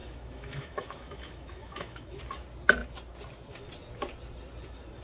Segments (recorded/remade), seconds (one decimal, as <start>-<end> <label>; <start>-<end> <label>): 0.0-2.2 remade; 2.2-5.0 recorded